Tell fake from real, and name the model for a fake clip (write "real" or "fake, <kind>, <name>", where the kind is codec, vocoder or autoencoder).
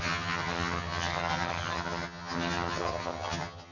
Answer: fake, vocoder, HiFi-GAN